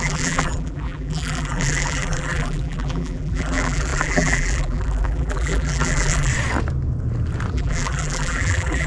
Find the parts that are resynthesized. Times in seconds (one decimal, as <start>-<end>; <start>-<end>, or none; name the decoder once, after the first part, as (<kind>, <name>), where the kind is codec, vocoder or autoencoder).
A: 0.0-6.3 (vocoder, BigVGAN v2); 7.5-8.9